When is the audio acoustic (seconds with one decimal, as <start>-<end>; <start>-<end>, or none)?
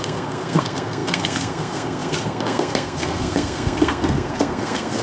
none